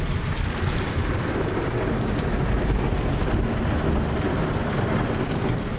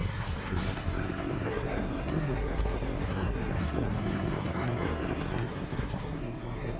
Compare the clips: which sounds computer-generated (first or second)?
second